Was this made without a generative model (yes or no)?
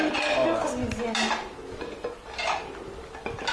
yes